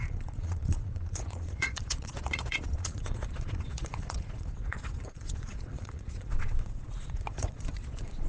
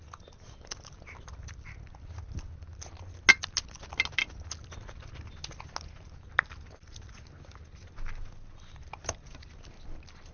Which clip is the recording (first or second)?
second